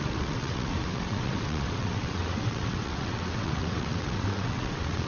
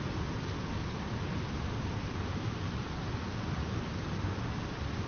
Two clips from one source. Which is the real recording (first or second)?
second